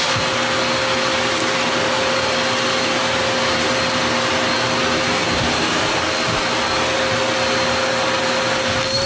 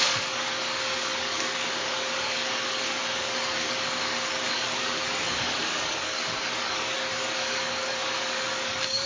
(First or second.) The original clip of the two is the first